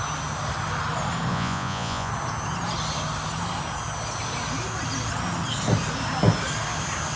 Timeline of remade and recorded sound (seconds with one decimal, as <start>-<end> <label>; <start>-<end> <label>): 0.0-1.3 recorded; 1.3-2.1 remade; 2.1-7.2 recorded